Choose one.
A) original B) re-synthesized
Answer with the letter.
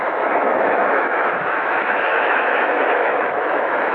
B